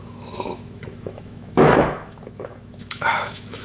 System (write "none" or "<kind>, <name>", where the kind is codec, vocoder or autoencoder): autoencoder, DAC-VAE